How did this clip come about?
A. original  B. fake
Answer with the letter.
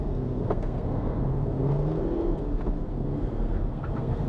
B